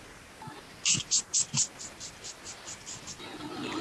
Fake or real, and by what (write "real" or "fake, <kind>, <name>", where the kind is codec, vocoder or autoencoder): real